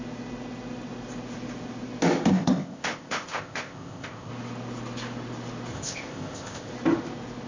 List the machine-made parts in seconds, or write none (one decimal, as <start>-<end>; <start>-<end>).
2.3-4.3; 5.7-6.7